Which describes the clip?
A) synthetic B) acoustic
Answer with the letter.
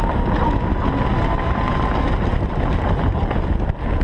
B